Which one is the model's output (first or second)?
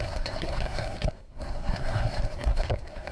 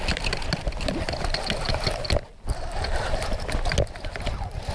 first